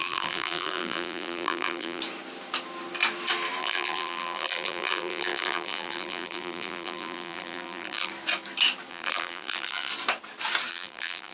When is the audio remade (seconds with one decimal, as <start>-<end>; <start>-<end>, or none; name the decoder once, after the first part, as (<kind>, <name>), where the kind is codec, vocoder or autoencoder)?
0.0-2.0 (vocoder, BigVGAN v2); 3.6-8.1; 8.9-9.9; 10.7-11.3